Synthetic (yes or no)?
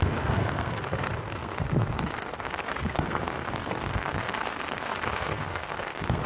yes